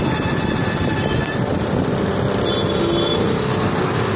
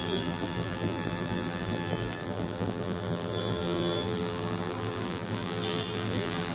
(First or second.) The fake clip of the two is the second